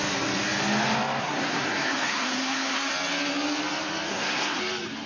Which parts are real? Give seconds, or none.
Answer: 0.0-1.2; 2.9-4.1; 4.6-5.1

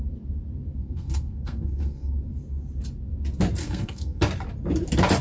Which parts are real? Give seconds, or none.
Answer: 0.0-0.8; 2.2-3.6; 4.2-5.2

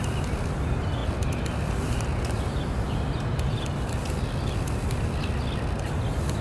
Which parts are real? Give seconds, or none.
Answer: 0.0-6.4

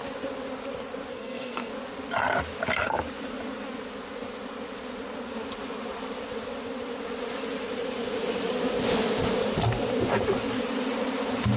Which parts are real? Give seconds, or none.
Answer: 0.0-1.1; 1.7-11.6

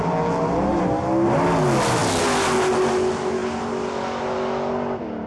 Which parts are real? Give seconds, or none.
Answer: 0.0-5.3

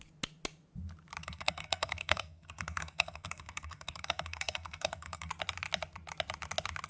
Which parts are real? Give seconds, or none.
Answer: 0.0-1.2; 5.3-6.9